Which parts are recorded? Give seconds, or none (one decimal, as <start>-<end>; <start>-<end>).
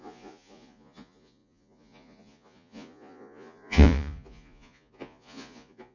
none